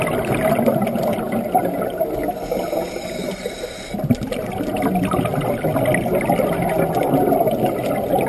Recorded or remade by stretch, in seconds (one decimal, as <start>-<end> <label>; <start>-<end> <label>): 0.0-8.3 recorded